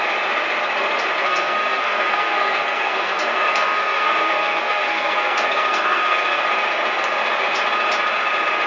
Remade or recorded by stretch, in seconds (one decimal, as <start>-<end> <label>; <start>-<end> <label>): 0.0-1.2 recorded; 1.2-6.4 remade; 6.4-8.7 recorded